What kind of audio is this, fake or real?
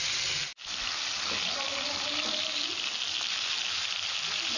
real